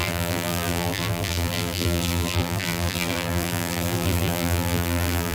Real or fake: fake